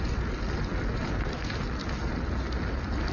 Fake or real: real